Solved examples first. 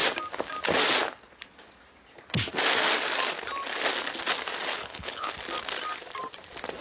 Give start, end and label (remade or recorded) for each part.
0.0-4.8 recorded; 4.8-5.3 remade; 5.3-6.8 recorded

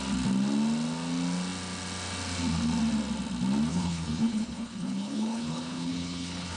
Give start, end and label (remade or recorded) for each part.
0.0-3.7 recorded; 3.7-6.6 remade

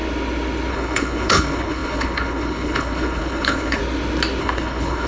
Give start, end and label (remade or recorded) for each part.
0.0-0.7 recorded; 0.7-3.8 remade; 3.8-4.4 recorded; 4.4-5.1 remade